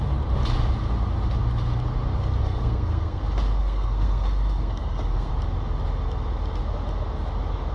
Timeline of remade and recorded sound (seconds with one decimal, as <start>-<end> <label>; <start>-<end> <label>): 0.0-2.4 recorded; 2.4-3.2 remade; 3.2-3.6 recorded; 3.6-5.3 remade; 5.3-7.7 recorded